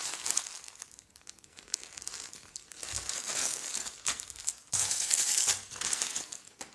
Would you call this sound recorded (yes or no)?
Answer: no